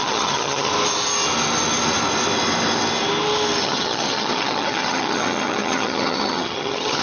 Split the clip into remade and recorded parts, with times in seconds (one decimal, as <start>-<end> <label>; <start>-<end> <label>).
0.0-0.7 remade; 0.7-3.6 recorded; 3.6-7.0 remade